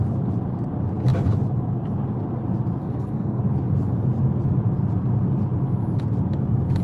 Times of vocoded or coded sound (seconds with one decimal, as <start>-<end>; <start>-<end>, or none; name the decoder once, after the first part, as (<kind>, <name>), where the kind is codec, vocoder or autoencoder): 2.8-3.4 (codec, SNAC)